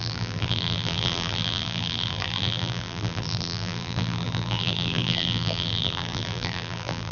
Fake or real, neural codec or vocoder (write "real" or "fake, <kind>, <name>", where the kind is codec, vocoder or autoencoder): fake, vocoder, BigVGAN v2